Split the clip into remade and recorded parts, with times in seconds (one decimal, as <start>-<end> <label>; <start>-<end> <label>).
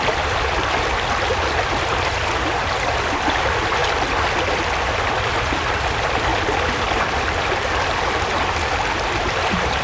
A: 0.0-3.8 remade; 3.8-5.2 recorded; 5.2-6.3 remade; 6.3-9.1 recorded; 9.1-9.8 remade